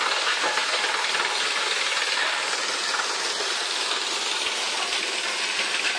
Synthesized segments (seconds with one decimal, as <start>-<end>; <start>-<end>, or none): 0.0-0.6; 4.1-6.0